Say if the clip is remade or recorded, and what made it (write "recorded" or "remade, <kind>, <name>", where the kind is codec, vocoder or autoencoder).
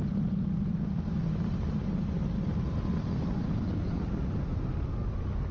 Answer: recorded